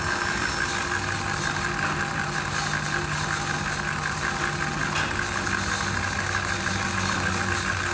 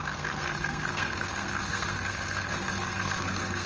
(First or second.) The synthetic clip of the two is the second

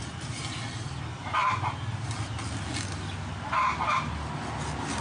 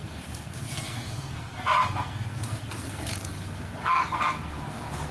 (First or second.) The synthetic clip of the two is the second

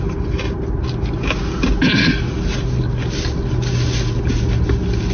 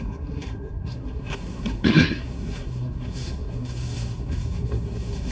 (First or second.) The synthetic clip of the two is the second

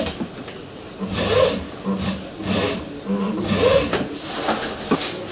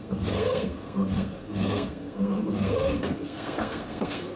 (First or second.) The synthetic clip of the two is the second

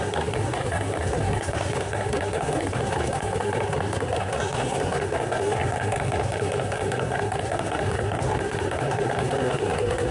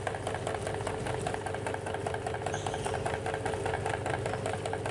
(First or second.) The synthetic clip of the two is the first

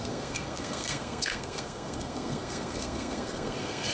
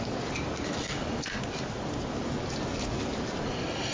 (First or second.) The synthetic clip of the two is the first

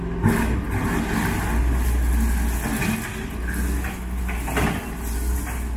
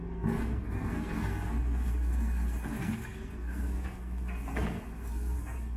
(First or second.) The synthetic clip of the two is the second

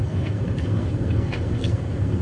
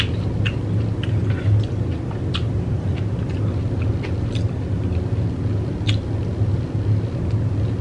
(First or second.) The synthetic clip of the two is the first